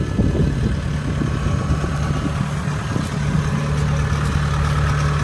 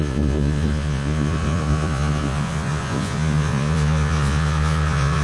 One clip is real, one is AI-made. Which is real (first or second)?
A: first